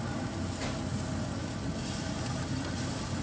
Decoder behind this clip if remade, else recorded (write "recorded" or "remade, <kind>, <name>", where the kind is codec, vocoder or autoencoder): recorded